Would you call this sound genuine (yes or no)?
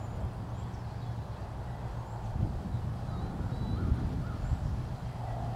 yes